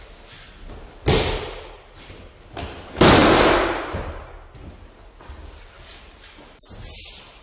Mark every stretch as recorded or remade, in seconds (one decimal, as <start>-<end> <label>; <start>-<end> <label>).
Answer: 0.0-7.4 recorded